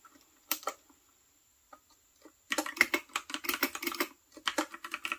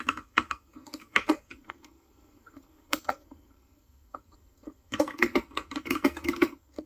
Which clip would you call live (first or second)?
first